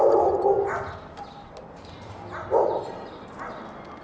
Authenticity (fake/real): real